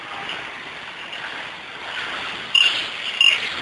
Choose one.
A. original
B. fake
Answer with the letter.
A